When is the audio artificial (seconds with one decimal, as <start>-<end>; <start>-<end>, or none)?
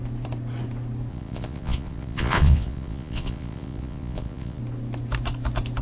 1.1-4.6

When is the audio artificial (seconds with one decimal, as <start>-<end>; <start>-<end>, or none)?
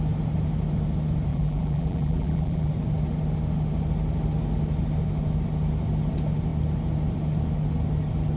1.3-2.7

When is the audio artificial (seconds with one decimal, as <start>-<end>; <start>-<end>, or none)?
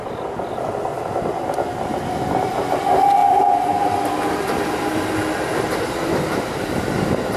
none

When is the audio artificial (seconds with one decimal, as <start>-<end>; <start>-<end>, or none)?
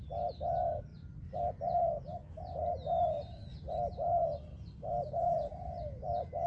none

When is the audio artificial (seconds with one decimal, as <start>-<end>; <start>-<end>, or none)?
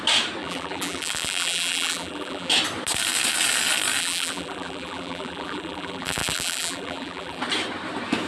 0.4-2.5; 4.0-7.4